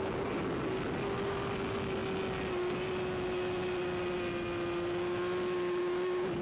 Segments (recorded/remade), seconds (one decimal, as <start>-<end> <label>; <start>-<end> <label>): 0.0-6.4 recorded